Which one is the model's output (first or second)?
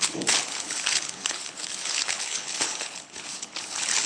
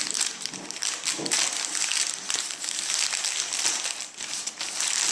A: first